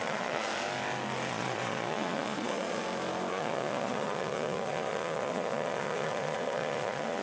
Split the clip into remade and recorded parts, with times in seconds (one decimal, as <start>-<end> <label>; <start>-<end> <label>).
0.0-0.5 remade; 0.5-1.3 recorded; 1.3-2.8 remade; 2.8-3.3 recorded; 3.3-7.2 remade